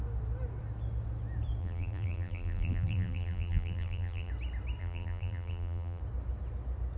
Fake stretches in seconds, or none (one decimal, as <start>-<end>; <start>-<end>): 1.6-4.3; 4.8-6.0